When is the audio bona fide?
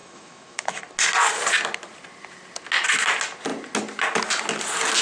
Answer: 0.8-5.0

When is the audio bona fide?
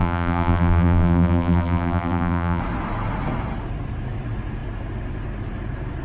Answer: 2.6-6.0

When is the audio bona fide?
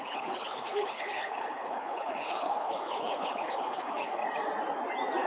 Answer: 4.2-5.3